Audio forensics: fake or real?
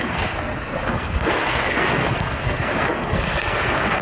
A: fake